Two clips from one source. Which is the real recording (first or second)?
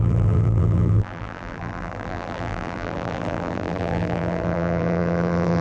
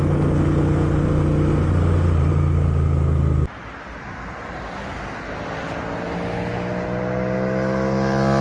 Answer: second